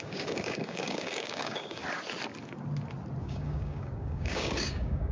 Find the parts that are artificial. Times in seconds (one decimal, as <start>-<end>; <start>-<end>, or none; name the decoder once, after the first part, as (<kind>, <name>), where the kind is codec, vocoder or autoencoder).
0.0-1.8 (codec, DAC); 3.2-5.1